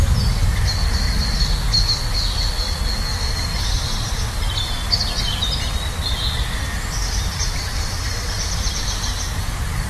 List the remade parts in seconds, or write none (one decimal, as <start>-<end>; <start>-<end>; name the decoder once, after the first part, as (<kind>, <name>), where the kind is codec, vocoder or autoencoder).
7.0-8.8 (vocoder, BigVGAN v2)